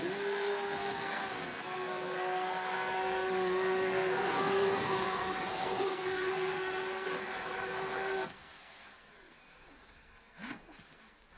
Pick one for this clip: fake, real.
fake